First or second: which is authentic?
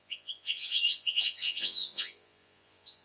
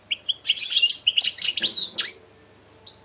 second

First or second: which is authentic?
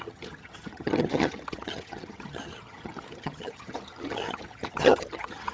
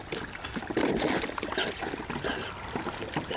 second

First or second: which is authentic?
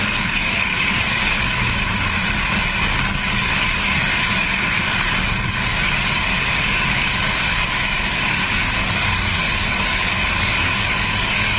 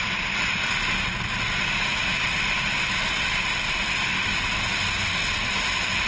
second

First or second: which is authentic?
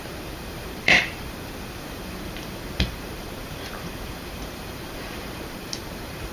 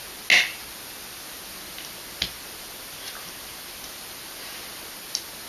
second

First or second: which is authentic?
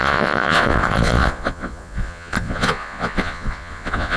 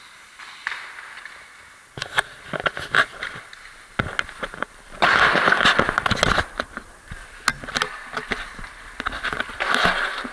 second